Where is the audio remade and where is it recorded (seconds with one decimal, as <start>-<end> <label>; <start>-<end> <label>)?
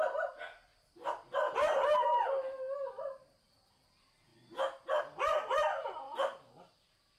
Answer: 0.0-0.7 remade; 0.7-3.0 recorded; 3.0-4.3 remade; 4.3-5.0 recorded; 5.0-7.2 remade